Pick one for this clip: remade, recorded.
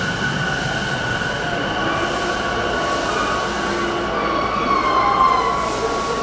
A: recorded